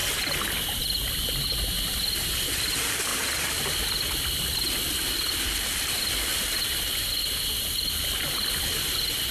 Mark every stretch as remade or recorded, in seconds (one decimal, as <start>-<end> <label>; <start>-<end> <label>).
0.0-3.1 recorded; 3.1-6.6 remade; 6.6-7.2 recorded; 7.2-8.6 remade; 8.6-9.3 recorded